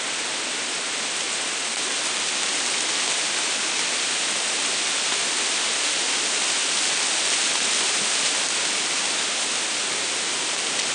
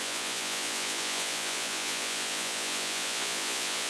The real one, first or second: first